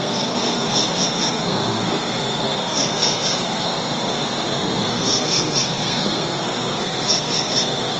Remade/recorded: remade